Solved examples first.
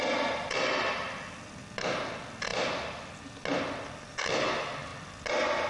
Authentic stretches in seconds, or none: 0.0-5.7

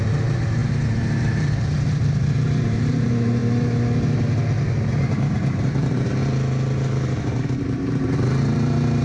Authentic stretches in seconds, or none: 3.4-5.0; 6.2-7.2

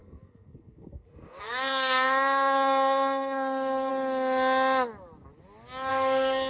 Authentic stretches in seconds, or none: 3.9-5.9

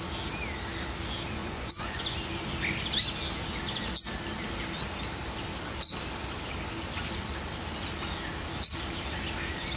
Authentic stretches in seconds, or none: 0.0-1.4; 2.0-9.8

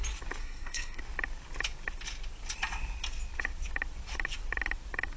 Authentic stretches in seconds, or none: 0.0-0.4; 1.0-5.2

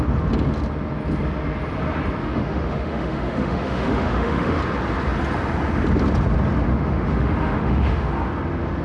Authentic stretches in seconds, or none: 0.0-2.2; 4.6-6.7; 8.1-8.8

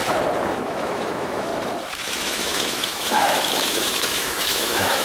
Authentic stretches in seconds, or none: 0.0-0.5; 1.5-2.0